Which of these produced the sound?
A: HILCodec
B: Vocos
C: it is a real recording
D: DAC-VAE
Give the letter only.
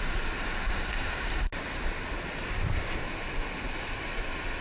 C